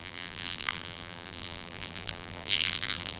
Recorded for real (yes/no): no